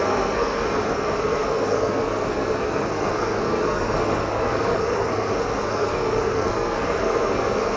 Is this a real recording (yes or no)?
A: no